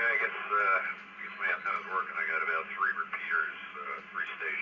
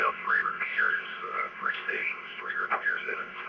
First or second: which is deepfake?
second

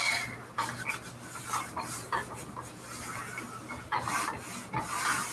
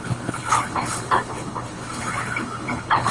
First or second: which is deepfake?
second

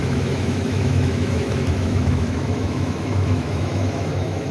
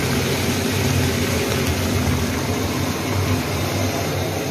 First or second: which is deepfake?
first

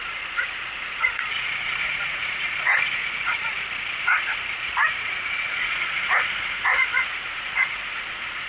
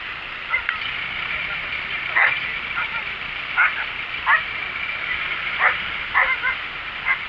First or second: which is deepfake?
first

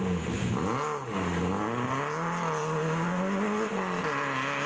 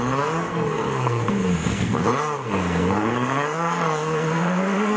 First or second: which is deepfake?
second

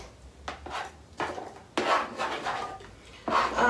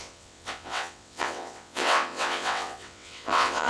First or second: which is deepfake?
second